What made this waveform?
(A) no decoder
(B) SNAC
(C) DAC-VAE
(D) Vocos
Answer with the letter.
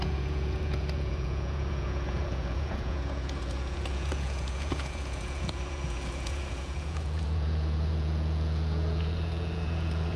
D